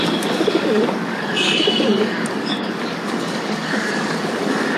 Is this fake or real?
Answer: fake